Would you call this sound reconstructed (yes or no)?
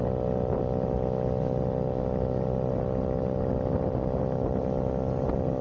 no